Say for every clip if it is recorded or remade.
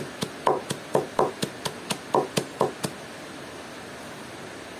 recorded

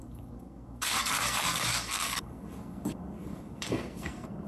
remade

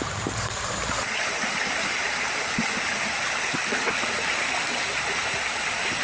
recorded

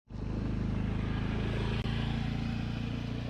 recorded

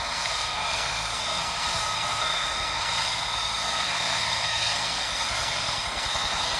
remade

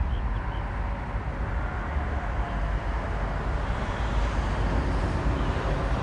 recorded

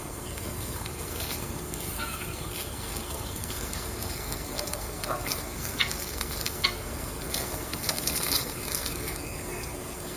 remade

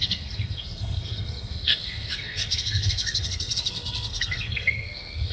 remade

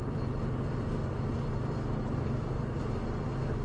recorded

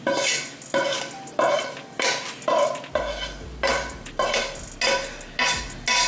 recorded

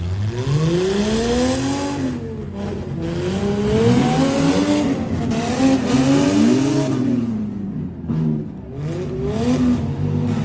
recorded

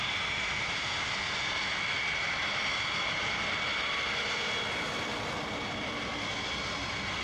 recorded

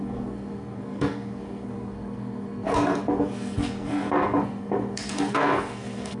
remade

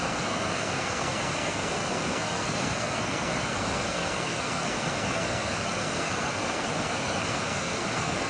remade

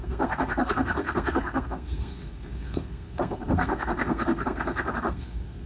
remade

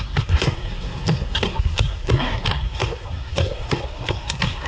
remade